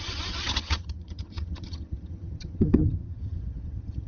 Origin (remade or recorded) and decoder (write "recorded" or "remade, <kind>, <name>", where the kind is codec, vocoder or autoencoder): remade, vocoder, HiFi-GAN